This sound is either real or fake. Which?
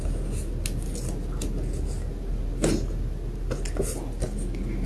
real